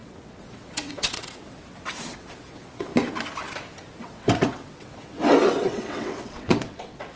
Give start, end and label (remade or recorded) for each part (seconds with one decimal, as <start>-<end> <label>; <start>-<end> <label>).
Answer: 0.0-2.9 remade; 2.9-4.0 recorded; 4.0-7.2 remade